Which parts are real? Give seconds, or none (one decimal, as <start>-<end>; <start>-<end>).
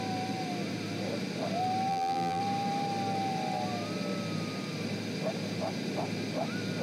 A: 0.0-1.9; 2.4-6.8